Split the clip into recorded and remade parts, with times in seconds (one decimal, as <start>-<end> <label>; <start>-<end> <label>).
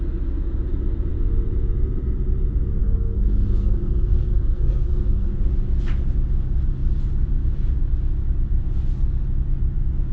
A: 0.0-2.8 recorded; 2.8-5.3 remade; 5.3-10.1 recorded